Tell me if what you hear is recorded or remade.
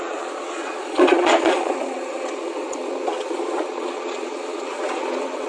remade